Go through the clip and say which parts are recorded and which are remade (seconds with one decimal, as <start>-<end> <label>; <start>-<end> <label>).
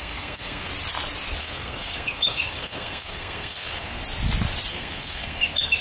0.0-0.7 remade; 0.7-1.4 recorded; 1.4-4.0 remade; 4.0-4.7 recorded; 4.7-5.8 remade